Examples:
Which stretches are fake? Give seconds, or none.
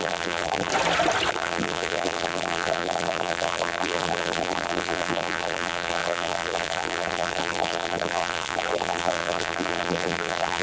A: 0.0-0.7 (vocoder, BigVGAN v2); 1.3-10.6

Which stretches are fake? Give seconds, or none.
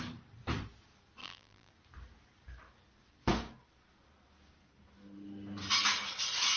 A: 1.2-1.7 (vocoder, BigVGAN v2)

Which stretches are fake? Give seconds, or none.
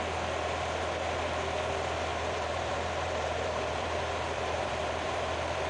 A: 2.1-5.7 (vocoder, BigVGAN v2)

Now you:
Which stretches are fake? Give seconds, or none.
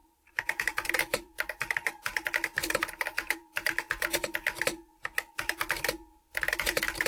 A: 0.0-1.5 (vocoder, BigVGAN v2)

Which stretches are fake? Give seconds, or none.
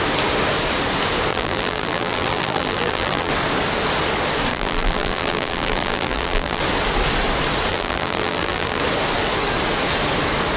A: 1.3-3.3 (vocoder, BigVGAN v2); 4.5-6.6; 7.7-8.8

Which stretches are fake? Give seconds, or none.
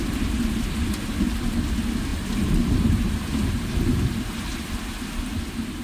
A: 2.1-4.5 (vocoder, BigVGAN v2)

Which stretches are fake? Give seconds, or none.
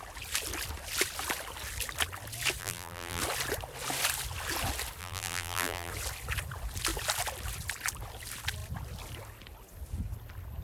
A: 2.6-3.2 (vocoder, BigVGAN v2); 5.0-5.9